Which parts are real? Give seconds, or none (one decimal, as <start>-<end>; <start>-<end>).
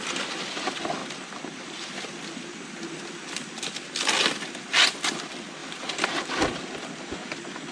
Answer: 0.0-5.6; 6.2-7.7